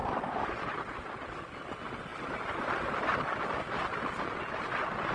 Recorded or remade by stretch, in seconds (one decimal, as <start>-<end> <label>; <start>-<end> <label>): 0.0-1.3 remade; 1.3-2.1 recorded; 2.1-2.7 remade; 2.7-5.1 recorded

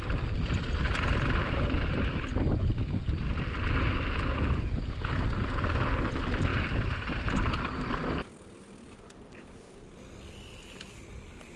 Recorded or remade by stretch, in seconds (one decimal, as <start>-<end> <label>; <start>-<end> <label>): 0.0-11.6 recorded

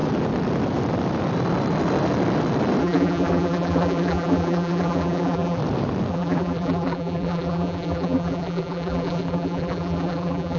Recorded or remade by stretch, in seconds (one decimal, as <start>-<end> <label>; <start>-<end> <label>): 0.0-2.8 recorded; 2.8-5.6 remade; 5.6-6.1 recorded; 6.1-10.6 remade